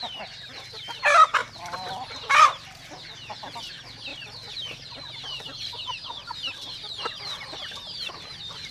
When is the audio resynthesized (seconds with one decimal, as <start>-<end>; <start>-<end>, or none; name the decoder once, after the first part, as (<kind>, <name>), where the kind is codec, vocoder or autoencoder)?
1.4-2.4 (vocoder, BigVGAN v2); 4.1-8.1